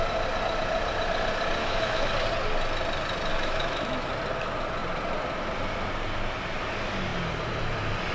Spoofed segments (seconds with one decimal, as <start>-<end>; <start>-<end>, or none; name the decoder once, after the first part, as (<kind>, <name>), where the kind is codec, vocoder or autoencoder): 1.6-2.1 (autoencoder, DAC-VAE); 3.3-4.1